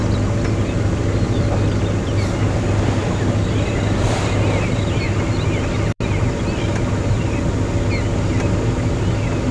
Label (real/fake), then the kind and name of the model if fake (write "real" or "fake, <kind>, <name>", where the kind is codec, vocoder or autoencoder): real